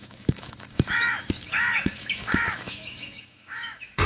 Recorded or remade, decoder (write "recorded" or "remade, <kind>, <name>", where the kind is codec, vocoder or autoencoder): remade, autoencoder, DAC-VAE